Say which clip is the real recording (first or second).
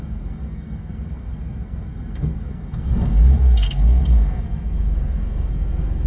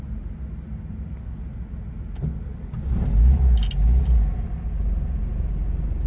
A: second